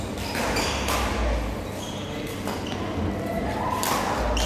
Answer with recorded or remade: recorded